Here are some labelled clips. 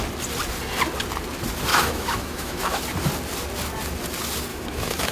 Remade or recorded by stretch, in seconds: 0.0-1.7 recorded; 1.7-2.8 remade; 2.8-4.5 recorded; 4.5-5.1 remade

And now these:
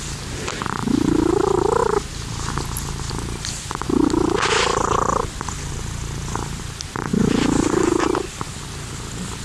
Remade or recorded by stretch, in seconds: 0.0-9.4 recorded

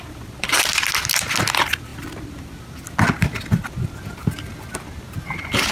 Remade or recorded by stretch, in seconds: 0.0-5.7 recorded

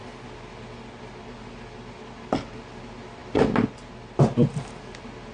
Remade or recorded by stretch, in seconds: 0.0-5.3 recorded

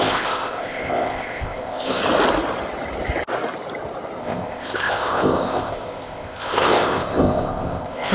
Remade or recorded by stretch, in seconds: 0.0-2.0 remade; 2.0-4.2 recorded; 4.2-8.1 remade

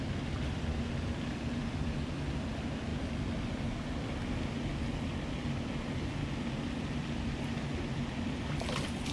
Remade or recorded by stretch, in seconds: 0.0-9.1 recorded